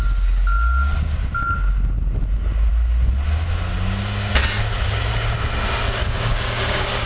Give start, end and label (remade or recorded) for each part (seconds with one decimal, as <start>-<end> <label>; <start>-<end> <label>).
0.0-6.0 recorded; 6.0-7.1 remade